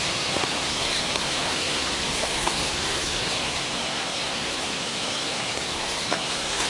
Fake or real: fake